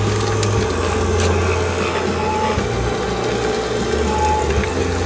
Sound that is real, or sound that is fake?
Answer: real